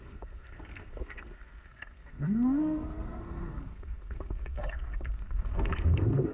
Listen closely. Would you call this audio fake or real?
fake